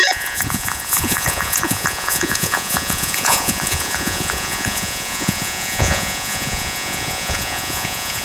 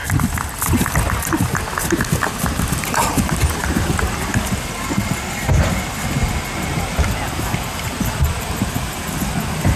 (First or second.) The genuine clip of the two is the second